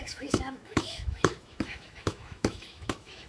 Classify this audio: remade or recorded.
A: remade